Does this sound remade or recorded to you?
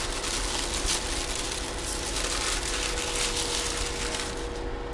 recorded